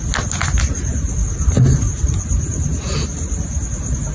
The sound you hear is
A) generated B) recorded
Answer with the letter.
B